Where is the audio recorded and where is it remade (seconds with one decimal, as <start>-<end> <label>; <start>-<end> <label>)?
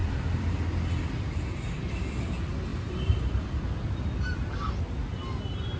0.0-0.5 remade; 0.5-2.7 recorded; 2.7-3.4 remade; 3.4-5.8 recorded